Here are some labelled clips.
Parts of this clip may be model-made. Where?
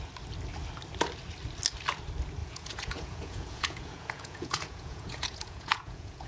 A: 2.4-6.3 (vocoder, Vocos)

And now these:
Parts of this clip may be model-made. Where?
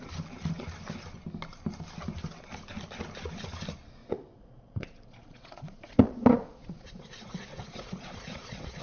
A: 4.0-8.8 (vocoder, Vocos)